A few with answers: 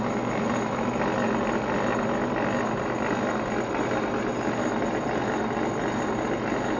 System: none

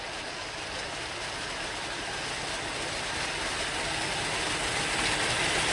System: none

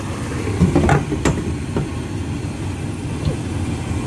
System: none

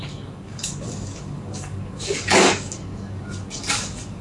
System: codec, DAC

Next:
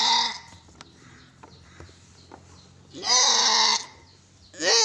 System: none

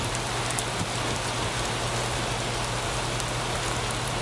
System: none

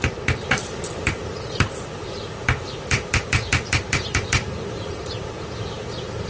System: vocoder, BigVGAN v2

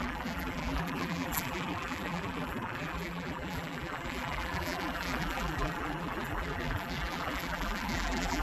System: vocoder, BigVGAN v2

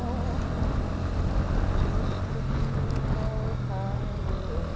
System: none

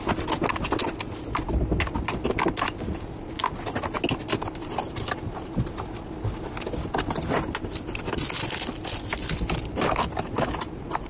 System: none